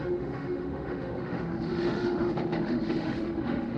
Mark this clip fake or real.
fake